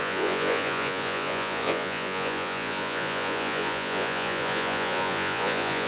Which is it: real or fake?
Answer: fake